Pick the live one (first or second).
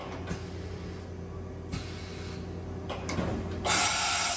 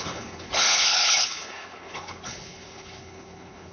first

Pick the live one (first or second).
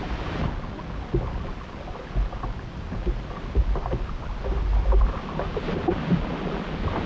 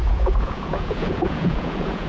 first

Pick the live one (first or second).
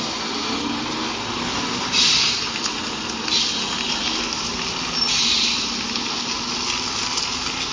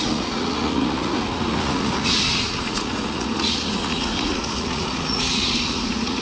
first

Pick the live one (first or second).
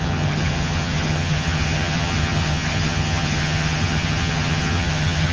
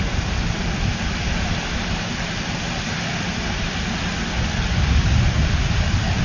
second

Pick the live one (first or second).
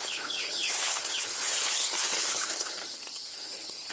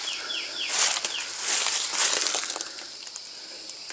second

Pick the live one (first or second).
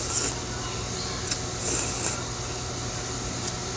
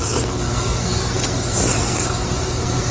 first